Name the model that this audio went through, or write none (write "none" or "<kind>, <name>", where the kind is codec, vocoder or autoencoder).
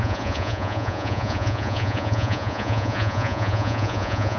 vocoder, Vocos